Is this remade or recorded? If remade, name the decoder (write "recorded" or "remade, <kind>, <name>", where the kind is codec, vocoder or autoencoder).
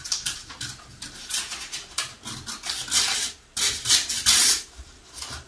recorded